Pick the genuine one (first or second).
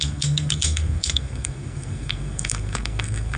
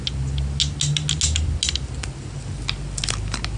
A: second